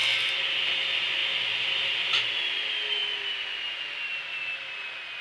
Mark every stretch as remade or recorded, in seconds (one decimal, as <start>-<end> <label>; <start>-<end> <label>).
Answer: 0.0-5.2 recorded